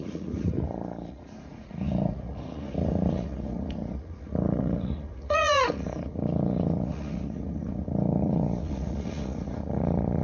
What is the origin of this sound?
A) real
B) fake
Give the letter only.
B